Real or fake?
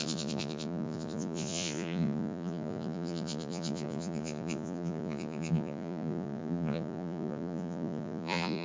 fake